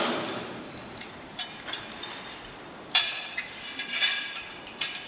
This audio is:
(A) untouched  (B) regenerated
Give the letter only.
B